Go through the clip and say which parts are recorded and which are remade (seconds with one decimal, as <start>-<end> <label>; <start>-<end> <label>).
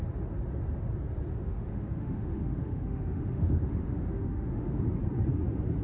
0.0-1.3 recorded; 1.3-4.8 remade; 4.8-5.8 recorded